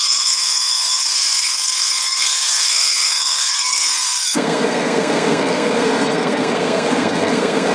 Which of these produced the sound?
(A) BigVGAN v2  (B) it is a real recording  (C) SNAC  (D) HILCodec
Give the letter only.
C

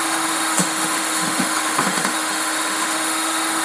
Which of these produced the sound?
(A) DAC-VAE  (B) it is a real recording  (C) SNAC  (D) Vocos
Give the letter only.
A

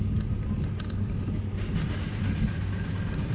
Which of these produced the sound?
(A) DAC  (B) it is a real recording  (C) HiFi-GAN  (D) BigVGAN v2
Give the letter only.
B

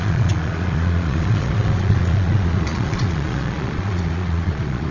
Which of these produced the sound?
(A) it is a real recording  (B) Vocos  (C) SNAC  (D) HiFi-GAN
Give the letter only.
B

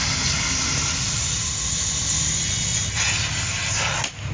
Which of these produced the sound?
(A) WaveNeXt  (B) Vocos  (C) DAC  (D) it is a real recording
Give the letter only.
D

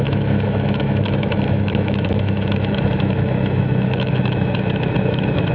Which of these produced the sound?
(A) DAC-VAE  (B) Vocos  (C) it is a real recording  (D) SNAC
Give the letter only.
A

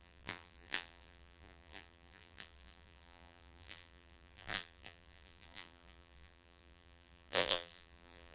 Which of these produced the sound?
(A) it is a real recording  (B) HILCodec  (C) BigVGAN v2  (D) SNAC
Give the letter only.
C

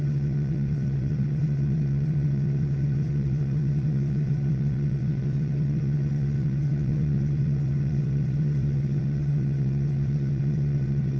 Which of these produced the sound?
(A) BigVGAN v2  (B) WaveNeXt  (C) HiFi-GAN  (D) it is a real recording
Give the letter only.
B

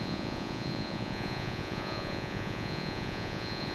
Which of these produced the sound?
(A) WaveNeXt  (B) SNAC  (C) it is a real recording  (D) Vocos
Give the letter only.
D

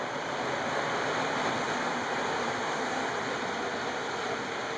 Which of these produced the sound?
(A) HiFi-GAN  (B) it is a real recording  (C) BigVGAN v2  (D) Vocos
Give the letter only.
C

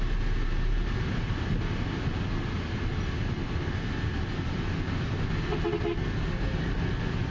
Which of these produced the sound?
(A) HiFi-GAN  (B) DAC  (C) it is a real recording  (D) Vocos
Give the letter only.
C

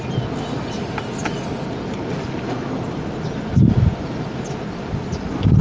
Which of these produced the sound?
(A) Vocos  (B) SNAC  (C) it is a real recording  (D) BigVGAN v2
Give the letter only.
C